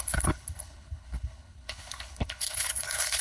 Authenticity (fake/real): fake